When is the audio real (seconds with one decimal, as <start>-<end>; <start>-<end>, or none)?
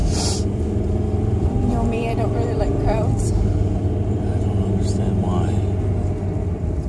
none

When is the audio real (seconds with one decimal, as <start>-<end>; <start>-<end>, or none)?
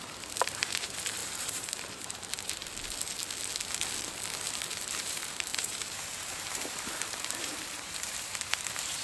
2.6-5.0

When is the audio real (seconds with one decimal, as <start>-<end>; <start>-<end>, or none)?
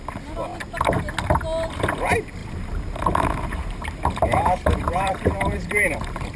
0.0-2.4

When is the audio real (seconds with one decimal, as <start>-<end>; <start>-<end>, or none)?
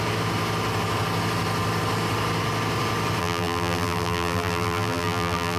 0.0-3.2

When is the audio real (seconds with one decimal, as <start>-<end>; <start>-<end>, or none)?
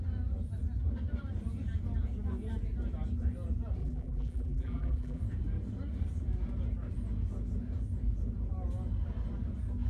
0.0-3.8; 5.2-9.9